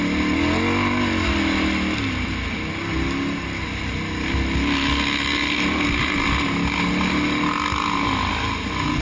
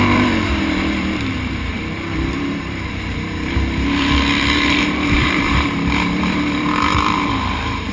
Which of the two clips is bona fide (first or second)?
first